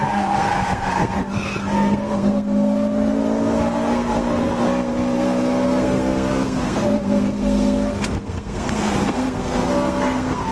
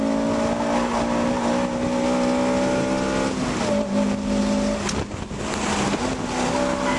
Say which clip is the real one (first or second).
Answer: second